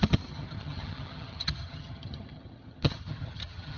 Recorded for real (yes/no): no